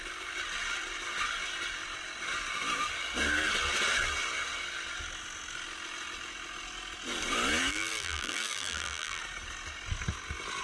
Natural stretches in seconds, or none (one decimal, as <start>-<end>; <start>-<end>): 0.0-7.7; 9.2-10.6